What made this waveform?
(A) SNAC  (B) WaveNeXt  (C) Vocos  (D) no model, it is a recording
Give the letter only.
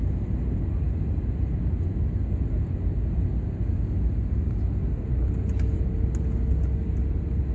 D